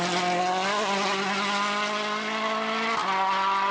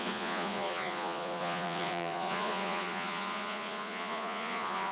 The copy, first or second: second